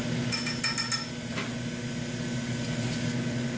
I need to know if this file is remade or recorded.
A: recorded